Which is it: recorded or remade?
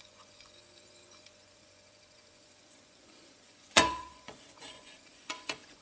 remade